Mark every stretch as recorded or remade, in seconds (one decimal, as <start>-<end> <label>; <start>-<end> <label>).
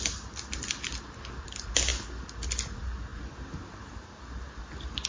0.0-5.1 recorded